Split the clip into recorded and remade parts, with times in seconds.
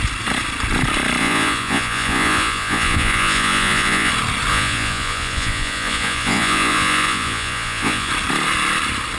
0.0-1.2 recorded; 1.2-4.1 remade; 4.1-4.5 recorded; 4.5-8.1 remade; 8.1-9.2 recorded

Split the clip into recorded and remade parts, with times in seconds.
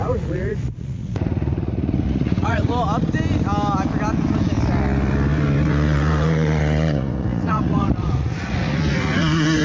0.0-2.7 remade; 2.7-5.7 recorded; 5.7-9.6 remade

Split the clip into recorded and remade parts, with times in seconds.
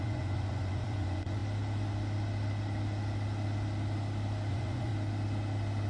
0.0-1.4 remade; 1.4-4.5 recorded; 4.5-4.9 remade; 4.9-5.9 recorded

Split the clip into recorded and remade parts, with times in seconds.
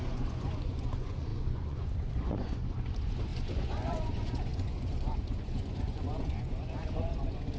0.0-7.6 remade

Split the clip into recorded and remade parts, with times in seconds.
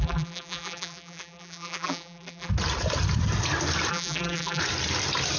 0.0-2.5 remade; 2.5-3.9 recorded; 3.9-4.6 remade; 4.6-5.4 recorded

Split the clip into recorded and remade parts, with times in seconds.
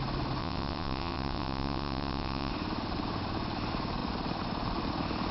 0.0-0.4 recorded; 0.4-2.5 remade; 2.5-5.3 recorded